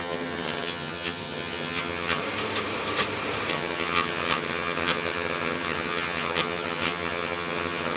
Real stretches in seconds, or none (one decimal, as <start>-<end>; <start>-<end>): 2.2-3.5